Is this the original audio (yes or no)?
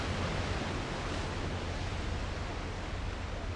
yes